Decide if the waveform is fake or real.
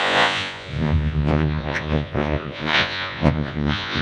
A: fake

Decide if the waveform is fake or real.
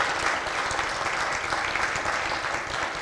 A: real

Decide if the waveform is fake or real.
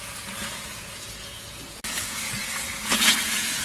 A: fake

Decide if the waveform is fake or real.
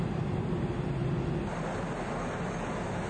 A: real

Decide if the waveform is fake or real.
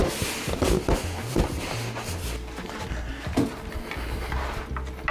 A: real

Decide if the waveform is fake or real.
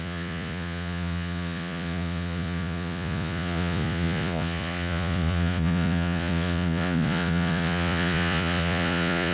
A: fake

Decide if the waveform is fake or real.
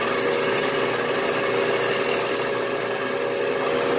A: real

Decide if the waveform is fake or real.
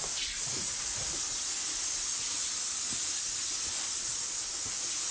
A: real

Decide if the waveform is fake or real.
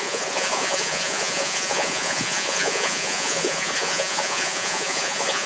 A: fake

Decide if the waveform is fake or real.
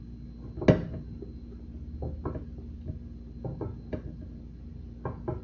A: real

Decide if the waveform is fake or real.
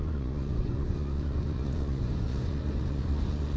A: fake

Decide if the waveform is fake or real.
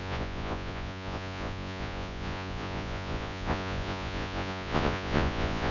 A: fake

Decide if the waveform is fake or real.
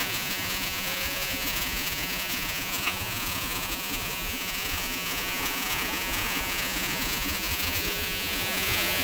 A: fake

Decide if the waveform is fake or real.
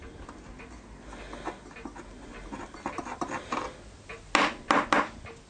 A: real